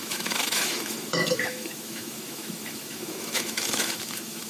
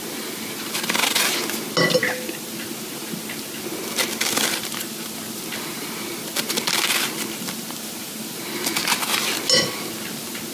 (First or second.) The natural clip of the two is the second